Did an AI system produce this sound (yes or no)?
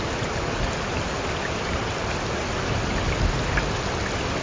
no